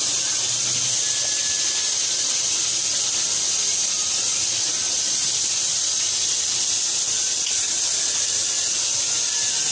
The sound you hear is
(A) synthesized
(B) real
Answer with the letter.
B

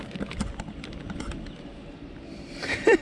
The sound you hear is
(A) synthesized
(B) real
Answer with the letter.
A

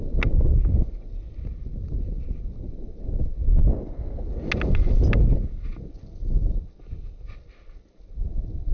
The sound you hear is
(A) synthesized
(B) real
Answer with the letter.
B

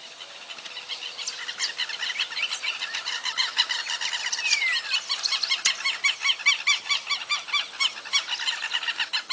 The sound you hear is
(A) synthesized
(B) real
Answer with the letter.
B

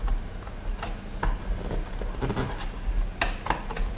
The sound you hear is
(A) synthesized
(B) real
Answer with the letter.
B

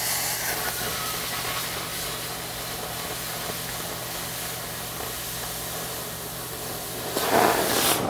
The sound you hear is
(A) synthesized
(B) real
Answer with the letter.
B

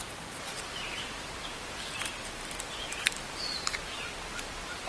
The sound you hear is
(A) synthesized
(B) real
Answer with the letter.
A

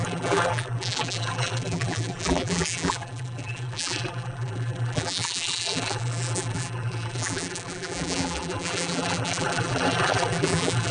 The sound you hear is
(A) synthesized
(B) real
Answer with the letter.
A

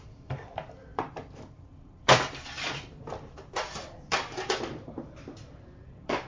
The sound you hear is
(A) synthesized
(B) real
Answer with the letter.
A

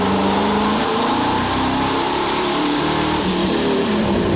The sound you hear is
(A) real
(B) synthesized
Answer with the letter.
B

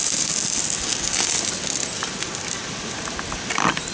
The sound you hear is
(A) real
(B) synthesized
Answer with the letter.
A